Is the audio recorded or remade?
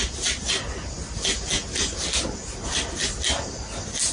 recorded